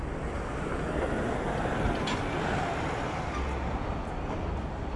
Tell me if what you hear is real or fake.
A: real